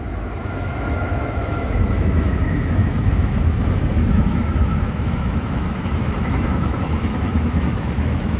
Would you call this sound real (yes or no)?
no